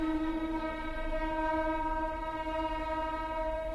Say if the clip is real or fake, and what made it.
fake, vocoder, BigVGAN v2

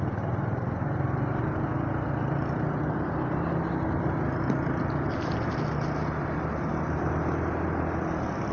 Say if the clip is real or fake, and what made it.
real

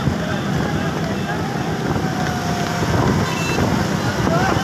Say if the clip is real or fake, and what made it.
real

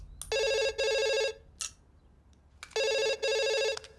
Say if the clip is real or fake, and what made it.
real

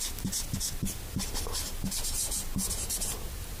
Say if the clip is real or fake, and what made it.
real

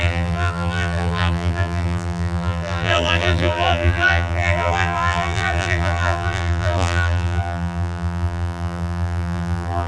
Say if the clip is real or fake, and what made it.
fake, vocoder, BigVGAN v2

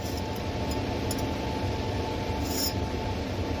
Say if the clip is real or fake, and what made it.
real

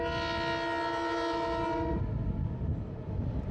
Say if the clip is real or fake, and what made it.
real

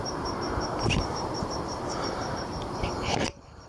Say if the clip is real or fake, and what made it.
fake, vocoder, BigVGAN v2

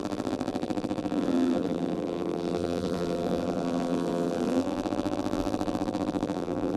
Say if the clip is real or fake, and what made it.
fake, vocoder, BigVGAN v2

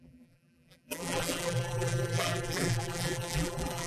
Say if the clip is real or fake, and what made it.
fake, vocoder, BigVGAN v2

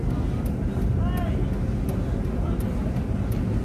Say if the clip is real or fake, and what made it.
real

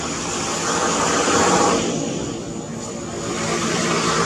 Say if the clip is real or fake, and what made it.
real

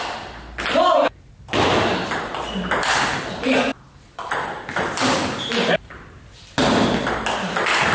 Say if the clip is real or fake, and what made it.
real